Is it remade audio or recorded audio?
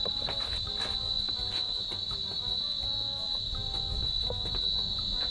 recorded